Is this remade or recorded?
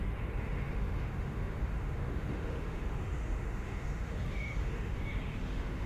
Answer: remade